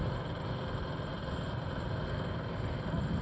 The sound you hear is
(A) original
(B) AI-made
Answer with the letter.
A